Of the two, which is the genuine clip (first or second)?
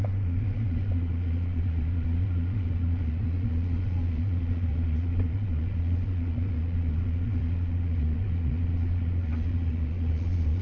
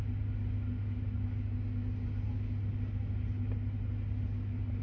second